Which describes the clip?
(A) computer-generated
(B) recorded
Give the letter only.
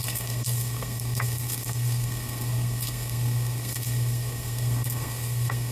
A